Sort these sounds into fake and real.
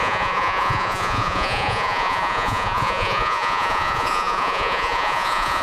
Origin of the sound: fake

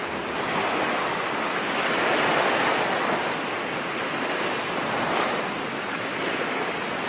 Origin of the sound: real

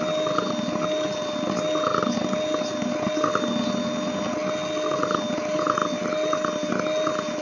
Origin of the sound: real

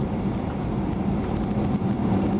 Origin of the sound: real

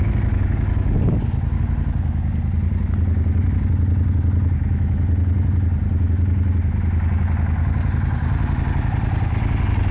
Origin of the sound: real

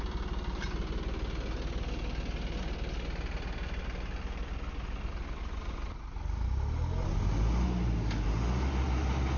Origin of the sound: real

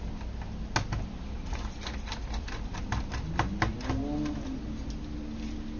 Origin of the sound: real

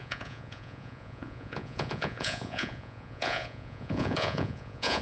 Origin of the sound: fake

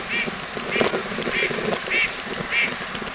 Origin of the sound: real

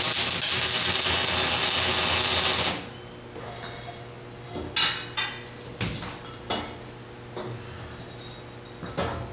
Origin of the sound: real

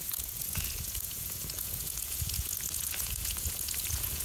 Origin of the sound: fake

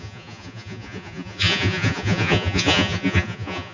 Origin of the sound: fake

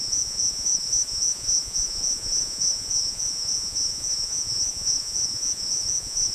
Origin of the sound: fake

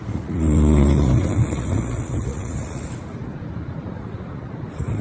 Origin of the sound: fake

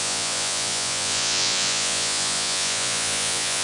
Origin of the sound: fake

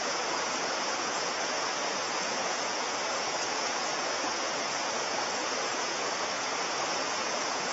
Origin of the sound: fake